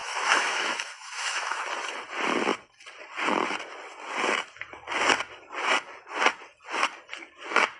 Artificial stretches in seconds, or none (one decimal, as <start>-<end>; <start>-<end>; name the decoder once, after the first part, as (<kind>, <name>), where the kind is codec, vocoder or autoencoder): 0.0-1.6 (autoencoder, DAC-VAE)